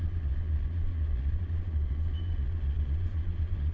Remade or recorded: remade